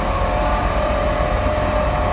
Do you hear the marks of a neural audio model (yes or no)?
no